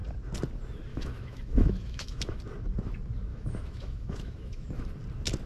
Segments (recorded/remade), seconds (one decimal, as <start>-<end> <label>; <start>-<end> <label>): 0.0-0.9 recorded; 0.9-2.4 remade; 2.4-3.3 recorded; 3.3-4.9 remade; 4.9-5.5 recorded